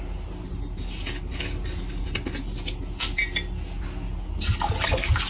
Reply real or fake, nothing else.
real